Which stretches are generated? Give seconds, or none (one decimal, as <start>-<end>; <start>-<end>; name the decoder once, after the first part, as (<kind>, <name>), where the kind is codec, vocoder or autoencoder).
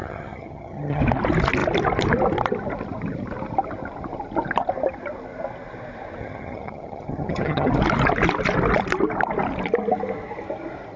0.0-1.0 (vocoder, HiFi-GAN); 6.2-7.7